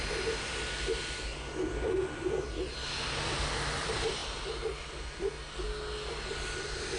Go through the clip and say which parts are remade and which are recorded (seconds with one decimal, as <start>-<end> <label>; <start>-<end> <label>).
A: 0.0-7.0 recorded